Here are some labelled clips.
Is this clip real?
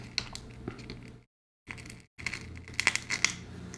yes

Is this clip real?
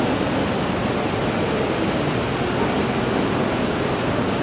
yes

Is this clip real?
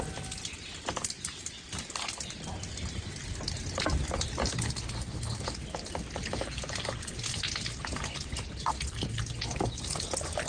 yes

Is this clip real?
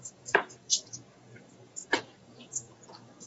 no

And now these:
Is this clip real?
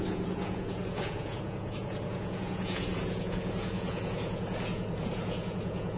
no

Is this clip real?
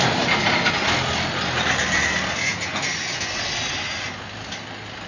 yes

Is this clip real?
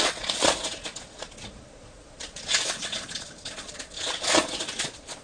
no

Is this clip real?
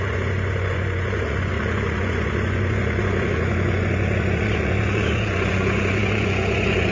no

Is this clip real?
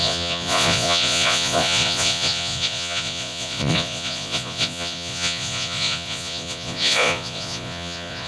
no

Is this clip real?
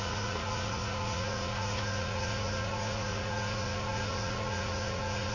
no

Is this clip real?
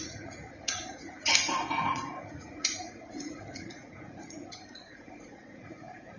no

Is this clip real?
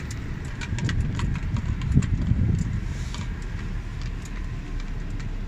yes